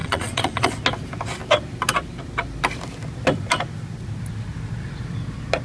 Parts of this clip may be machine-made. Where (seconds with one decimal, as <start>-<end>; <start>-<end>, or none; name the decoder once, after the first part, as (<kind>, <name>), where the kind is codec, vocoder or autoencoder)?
0.0-0.7 (vocoder, Vocos)